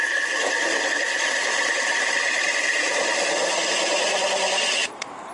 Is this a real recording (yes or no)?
no